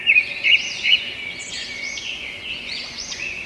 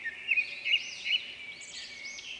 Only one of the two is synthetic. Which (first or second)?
first